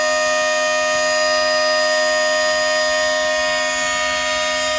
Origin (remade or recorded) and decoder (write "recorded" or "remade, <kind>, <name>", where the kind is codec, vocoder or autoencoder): recorded